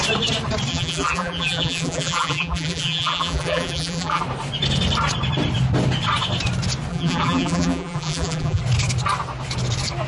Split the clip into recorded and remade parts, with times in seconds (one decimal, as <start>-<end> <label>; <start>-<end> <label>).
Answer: 0.0-0.7 recorded; 0.7-4.2 remade; 4.2-6.9 recorded; 6.9-8.6 remade; 8.6-10.1 recorded